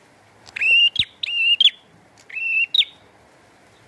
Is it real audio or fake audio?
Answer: real